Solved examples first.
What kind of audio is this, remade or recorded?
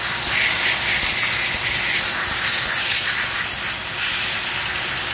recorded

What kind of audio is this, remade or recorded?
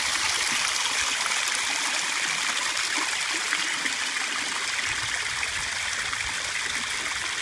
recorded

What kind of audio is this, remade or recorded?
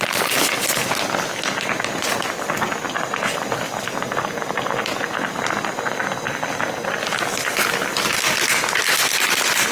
recorded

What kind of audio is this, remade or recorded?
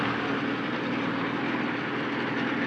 recorded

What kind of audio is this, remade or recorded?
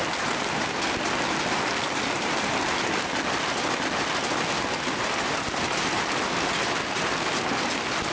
recorded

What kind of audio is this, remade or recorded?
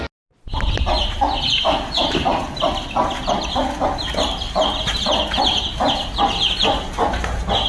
recorded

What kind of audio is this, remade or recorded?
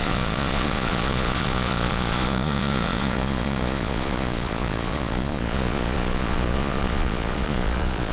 remade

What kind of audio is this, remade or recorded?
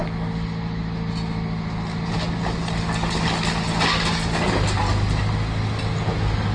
recorded